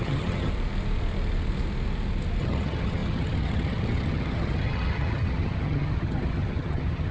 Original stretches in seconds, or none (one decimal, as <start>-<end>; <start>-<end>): 0.5-2.4